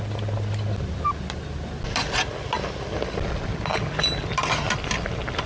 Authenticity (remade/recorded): recorded